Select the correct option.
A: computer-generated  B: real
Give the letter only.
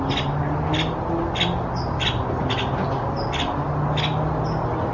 B